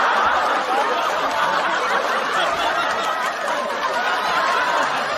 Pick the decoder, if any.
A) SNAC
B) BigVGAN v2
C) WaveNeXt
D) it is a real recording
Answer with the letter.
D